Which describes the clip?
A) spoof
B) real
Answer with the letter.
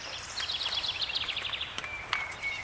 A